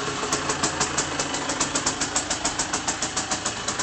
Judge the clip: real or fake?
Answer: real